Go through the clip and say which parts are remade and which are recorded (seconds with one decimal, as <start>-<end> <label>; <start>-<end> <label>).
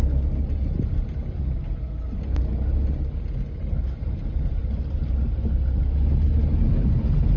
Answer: 0.0-7.4 recorded